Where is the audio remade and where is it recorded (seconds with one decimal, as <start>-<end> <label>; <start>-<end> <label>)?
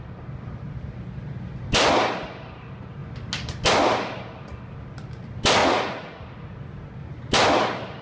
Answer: 0.0-5.6 recorded; 5.6-6.6 remade; 6.6-8.0 recorded